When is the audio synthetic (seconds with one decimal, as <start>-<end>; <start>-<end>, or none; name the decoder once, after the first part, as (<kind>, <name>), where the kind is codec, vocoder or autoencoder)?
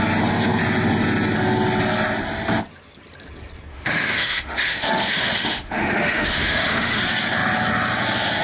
3.7-7.0 (autoencoder, DAC-VAE)